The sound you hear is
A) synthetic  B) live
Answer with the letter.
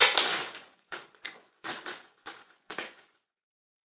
A